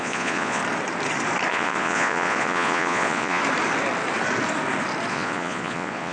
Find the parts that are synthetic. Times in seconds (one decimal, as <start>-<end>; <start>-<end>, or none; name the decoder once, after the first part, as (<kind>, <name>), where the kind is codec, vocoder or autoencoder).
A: 0.0-0.6 (vocoder, Vocos); 1.5-3.4; 5.1-6.1